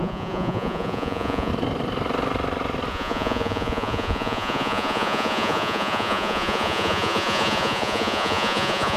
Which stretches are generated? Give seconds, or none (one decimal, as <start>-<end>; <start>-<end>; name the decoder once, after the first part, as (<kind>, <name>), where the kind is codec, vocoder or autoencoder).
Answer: 0.0-1.5 (vocoder, Vocos); 2.9-9.0